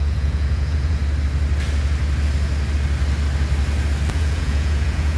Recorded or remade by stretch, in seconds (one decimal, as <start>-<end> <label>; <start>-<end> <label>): 0.0-1.0 remade; 1.0-4.1 recorded; 4.1-5.2 remade